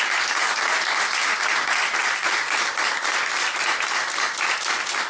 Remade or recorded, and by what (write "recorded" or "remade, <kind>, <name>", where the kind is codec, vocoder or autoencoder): recorded